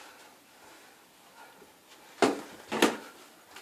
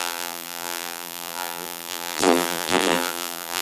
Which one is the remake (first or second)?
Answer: second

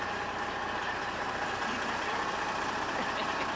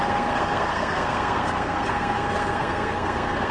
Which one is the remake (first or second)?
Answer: second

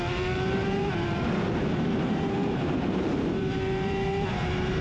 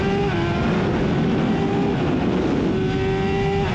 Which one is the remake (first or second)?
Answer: first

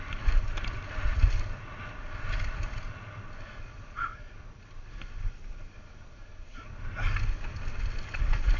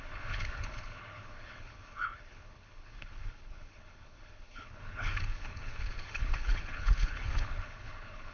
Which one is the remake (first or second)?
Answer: second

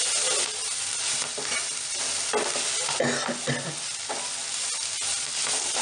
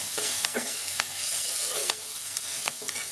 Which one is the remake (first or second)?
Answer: second